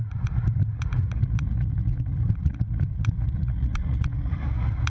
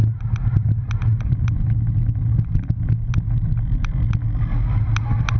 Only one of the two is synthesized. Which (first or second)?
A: first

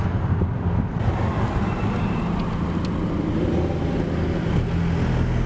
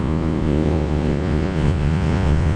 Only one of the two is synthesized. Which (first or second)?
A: second